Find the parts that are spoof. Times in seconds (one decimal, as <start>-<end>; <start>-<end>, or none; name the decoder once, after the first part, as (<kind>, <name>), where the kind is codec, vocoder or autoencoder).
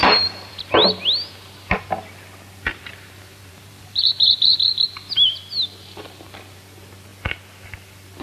0.0-0.5 (vocoder, BigVGAN v2); 2.7-5.4